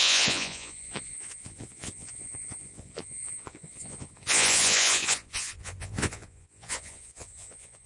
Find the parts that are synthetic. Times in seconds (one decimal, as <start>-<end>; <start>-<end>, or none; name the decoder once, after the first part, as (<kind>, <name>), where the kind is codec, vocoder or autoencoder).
0.0-7.9 (vocoder, Vocos)